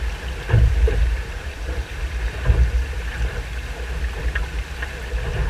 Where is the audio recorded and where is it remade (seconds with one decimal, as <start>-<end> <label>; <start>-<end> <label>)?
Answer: 0.0-1.0 recorded; 1.0-3.3 remade; 3.3-5.5 recorded